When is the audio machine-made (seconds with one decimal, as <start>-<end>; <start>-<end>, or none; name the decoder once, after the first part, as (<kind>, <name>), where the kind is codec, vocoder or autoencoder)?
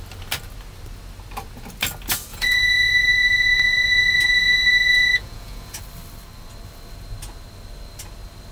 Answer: 2.3-5.8 (vocoder, Vocos)